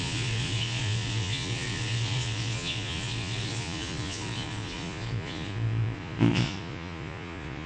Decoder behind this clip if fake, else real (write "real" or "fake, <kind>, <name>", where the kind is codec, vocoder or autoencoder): fake, vocoder, Vocos